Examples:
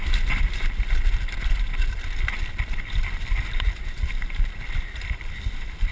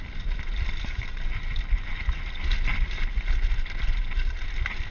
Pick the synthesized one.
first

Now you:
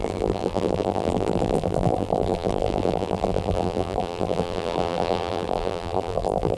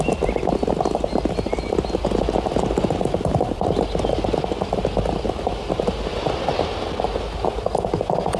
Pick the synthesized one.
first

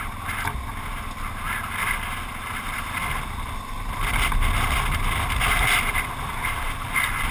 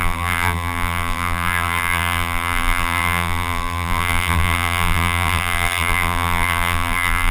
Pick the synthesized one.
second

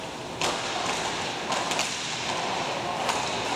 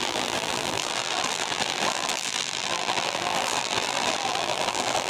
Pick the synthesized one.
second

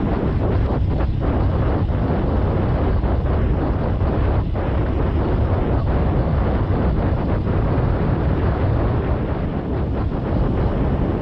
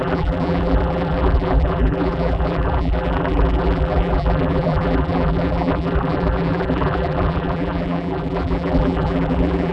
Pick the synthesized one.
second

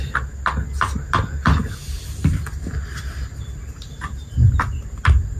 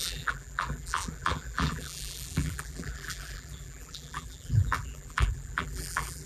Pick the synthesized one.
second